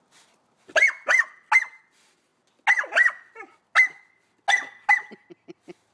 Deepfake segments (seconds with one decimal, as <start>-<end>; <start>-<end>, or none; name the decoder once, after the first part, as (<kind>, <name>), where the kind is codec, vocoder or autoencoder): none